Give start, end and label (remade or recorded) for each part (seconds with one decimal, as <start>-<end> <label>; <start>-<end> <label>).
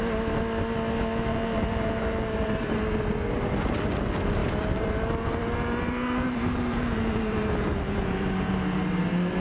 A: 0.0-1.3 recorded; 1.3-2.8 remade; 2.8-4.4 recorded; 4.4-8.5 remade; 8.5-9.4 recorded